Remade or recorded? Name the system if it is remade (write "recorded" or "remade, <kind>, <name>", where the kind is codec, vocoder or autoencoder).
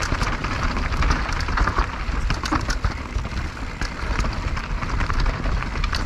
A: recorded